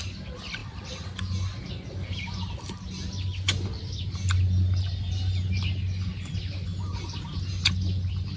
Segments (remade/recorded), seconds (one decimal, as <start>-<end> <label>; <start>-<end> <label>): 0.0-8.4 recorded